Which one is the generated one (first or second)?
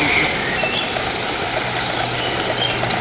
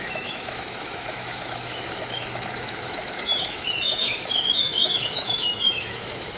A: second